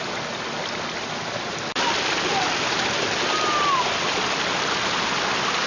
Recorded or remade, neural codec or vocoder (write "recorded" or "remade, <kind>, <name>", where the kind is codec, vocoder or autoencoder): recorded